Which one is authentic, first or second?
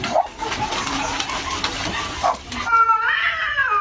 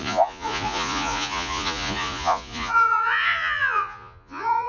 first